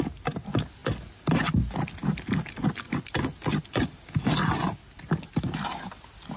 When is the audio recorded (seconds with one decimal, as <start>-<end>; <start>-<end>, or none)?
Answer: 0.0-6.4